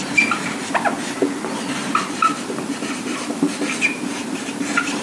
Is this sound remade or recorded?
remade